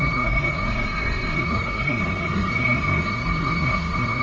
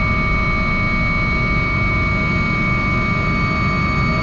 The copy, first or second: first